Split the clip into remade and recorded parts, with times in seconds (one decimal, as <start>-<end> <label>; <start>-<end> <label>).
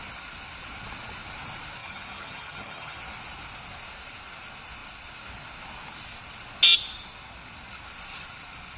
0.0-1.8 recorded; 1.8-3.0 remade; 3.0-8.8 recorded